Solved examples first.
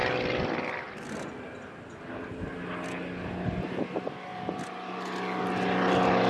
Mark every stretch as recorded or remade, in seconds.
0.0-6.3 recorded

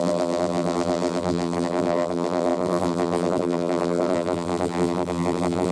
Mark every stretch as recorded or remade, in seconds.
0.0-5.7 remade

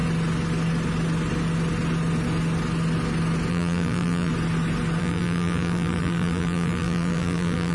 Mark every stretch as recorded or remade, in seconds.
0.0-3.5 recorded; 3.5-4.3 remade; 4.3-5.0 recorded; 5.0-7.7 remade

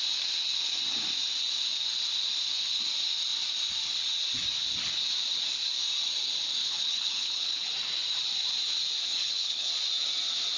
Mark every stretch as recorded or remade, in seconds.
0.0-6.6 recorded; 6.6-7.7 remade; 7.7-9.1 recorded; 9.1-9.7 remade; 9.7-10.6 recorded

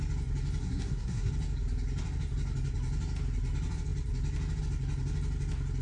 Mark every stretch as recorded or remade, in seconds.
0.0-0.6 recorded; 0.6-1.3 remade; 1.3-5.8 recorded

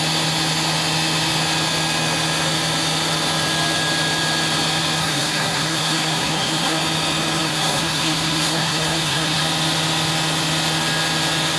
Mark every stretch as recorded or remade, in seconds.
0.0-5.0 recorded; 5.0-6.8 remade; 6.8-7.4 recorded; 7.4-9.4 remade; 9.4-11.6 recorded